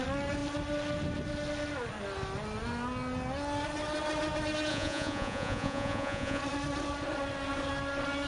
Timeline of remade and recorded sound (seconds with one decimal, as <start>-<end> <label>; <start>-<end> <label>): 0.0-4.7 recorded; 4.7-6.4 remade; 6.4-8.3 recorded